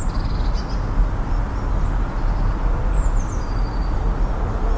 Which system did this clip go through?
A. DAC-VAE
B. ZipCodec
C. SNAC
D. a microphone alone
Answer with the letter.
D